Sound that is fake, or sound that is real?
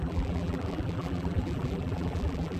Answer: fake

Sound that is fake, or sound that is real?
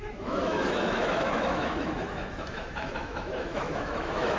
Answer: fake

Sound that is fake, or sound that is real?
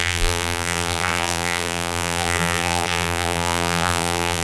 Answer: fake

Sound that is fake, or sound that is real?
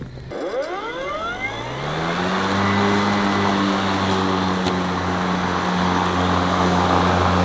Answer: real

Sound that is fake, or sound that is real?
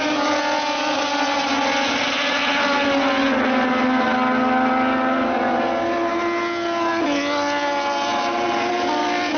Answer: real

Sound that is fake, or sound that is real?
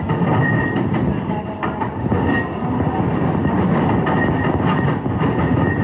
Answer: real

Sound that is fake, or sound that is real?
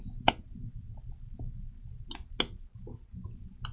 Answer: real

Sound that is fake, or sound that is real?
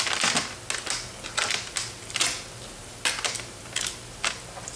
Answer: real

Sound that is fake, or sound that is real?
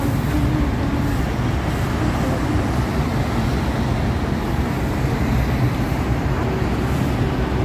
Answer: real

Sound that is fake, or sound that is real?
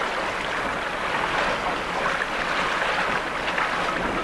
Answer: real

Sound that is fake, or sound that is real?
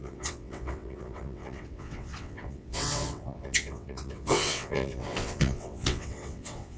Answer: fake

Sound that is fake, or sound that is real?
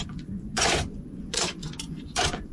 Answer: fake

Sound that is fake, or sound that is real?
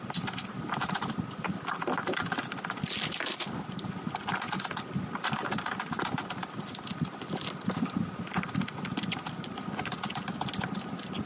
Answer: real